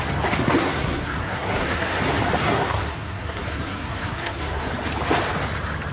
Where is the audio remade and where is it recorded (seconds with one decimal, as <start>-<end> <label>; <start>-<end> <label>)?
0.0-0.6 recorded; 0.6-2.0 remade; 2.0-2.4 recorded; 2.4-4.7 remade; 4.7-5.9 recorded